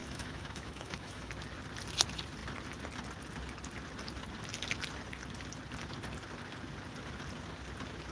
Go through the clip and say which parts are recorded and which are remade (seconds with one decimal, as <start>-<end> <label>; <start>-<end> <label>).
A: 0.0-1.3 remade; 1.3-8.1 recorded